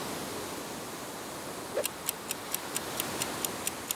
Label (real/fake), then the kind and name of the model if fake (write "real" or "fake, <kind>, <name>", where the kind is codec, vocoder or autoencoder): real